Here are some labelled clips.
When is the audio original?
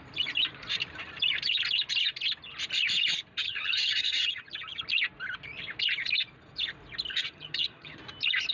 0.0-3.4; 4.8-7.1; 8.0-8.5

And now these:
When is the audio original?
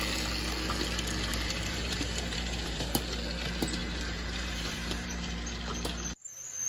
0.0-1.3; 3.0-3.8; 5.3-6.7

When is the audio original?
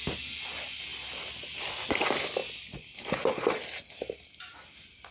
0.0-5.1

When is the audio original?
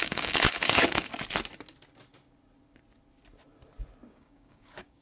1.1-4.1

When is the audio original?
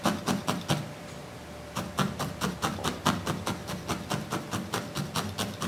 0.0-5.7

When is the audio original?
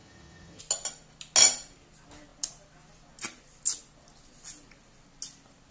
0.6-5.7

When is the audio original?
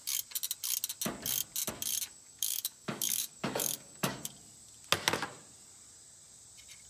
0.0-2.1; 4.3-6.9